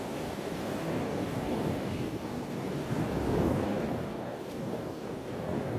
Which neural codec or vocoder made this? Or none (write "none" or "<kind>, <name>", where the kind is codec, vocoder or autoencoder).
codec, DAC